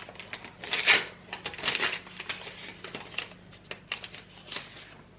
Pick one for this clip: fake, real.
real